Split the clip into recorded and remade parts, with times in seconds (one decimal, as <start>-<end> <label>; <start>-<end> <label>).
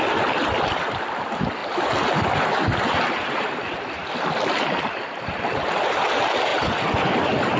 0.0-7.6 recorded